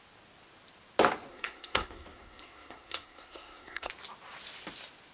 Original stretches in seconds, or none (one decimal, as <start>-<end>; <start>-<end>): 0.0-1.3; 3.9-5.1